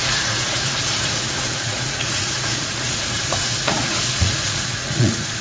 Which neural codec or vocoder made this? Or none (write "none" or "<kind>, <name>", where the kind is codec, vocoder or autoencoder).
vocoder, Vocos